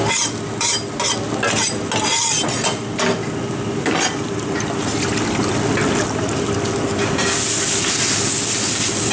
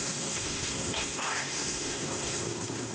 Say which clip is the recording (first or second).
first